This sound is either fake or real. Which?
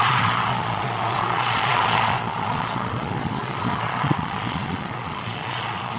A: fake